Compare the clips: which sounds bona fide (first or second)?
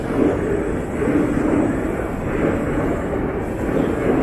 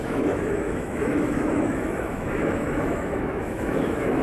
first